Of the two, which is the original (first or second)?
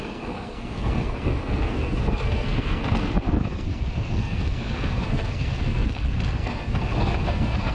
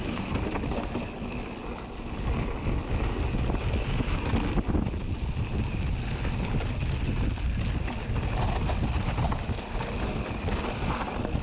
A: second